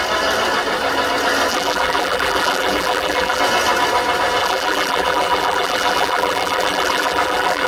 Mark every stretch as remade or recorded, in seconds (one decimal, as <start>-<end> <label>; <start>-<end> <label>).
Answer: 0.0-1.5 recorded; 1.5-3.4 remade; 3.4-4.4 recorded; 4.4-7.7 remade